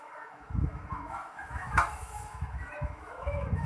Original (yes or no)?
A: no